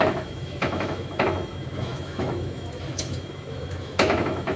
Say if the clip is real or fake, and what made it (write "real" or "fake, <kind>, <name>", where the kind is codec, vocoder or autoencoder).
fake, autoencoder, DAC-VAE